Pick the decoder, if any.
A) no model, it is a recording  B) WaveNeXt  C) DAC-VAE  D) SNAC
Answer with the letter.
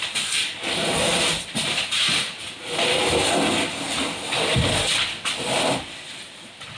A